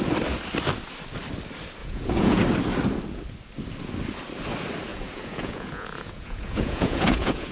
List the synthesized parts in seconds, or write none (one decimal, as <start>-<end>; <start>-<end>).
1.8-2.4; 4.9-7.5